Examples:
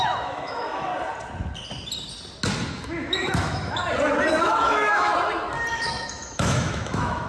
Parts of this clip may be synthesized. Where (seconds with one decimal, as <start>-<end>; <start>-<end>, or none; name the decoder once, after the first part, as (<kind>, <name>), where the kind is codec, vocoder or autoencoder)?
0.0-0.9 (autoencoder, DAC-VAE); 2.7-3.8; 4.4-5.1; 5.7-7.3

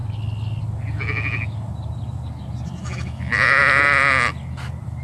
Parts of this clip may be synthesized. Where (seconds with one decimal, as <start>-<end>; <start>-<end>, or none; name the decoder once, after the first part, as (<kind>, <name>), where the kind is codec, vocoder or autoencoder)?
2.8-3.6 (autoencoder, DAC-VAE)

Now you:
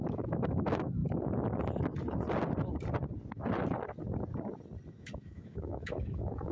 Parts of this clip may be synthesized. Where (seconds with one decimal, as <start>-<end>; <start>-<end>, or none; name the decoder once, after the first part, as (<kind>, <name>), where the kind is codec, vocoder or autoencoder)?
0.0-1.0 (autoencoder, DAC-VAE); 4.9-6.5

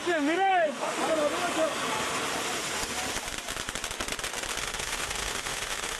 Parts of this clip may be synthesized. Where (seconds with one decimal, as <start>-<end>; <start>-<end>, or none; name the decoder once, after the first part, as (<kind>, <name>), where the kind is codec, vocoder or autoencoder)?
0.0-1.0 (autoencoder, DAC-VAE); 4.6-6.0